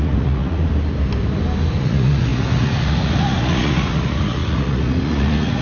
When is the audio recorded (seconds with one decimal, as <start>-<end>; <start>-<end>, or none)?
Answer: 0.7-1.8